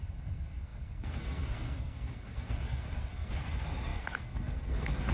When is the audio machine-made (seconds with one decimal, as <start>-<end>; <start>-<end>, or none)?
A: 0.0-5.1